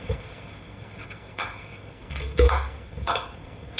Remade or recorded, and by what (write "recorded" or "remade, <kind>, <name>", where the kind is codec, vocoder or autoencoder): remade, codec, SNAC